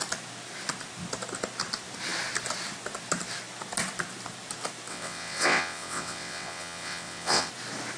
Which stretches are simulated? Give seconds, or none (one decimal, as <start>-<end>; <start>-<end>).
4.9-7.5

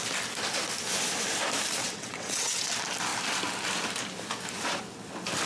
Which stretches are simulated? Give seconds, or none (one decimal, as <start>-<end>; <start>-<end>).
1.8-2.7

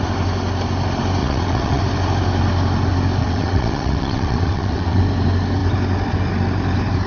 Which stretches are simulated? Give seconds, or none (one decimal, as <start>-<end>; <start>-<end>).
1.2-1.8; 3.2-5.0

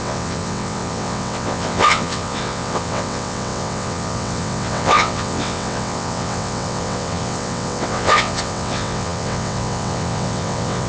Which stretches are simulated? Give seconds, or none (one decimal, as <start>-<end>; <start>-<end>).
0.0-10.9

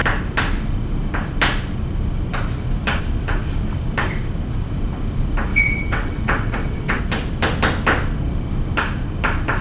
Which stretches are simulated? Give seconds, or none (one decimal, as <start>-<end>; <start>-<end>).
5.5-7.0

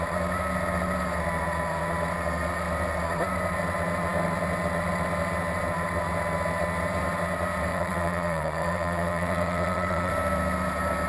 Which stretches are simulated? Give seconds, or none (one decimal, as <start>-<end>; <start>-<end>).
7.7-10.1